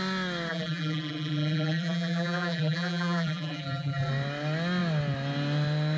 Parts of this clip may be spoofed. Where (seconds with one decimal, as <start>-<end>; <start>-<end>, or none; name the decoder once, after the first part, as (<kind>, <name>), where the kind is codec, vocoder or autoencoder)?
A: 0.5-4.1 (vocoder, BigVGAN v2)